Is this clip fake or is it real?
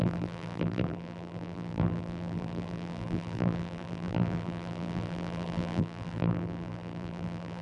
fake